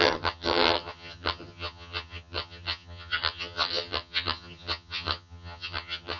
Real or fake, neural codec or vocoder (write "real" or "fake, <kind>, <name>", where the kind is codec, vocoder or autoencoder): fake, vocoder, HiFi-GAN